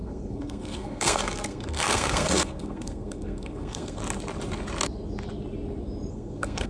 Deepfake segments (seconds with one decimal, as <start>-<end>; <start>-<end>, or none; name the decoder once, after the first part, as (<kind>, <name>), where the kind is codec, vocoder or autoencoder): 0.0-4.0 (codec, SNAC); 6.1-6.7